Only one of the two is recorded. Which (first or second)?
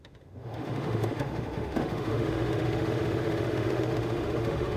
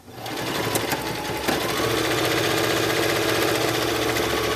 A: second